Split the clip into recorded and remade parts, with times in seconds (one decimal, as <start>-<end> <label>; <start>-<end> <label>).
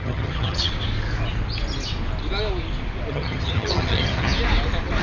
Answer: 0.0-0.7 remade; 0.7-3.1 recorded; 3.1-4.3 remade; 4.3-5.0 recorded